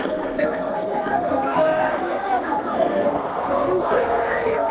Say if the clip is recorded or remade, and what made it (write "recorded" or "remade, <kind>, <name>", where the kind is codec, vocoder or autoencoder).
remade, codec, SNAC